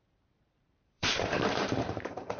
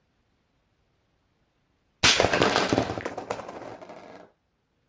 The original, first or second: second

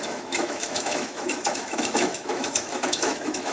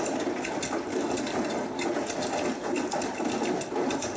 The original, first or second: second